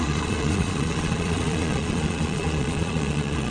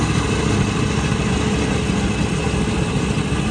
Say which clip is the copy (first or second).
first